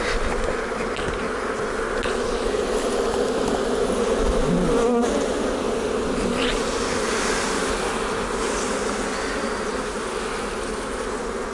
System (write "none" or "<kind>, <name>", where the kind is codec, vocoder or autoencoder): none